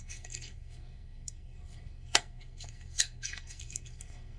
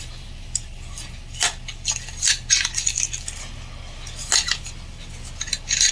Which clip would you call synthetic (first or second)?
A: first